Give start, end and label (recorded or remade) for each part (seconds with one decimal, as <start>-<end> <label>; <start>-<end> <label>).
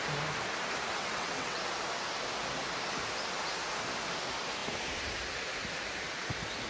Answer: 0.0-1.0 recorded; 1.0-1.6 remade; 1.6-6.7 recorded